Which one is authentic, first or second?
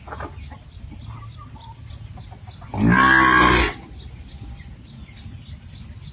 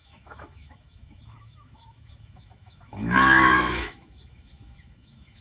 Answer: first